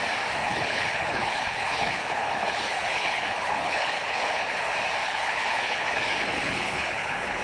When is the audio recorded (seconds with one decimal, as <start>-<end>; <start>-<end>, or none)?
0.0-0.4; 4.6-5.0